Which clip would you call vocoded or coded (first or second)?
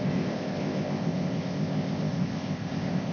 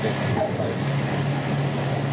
first